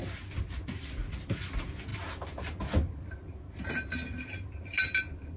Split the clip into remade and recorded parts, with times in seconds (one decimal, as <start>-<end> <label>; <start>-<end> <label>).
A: 0.0-5.4 recorded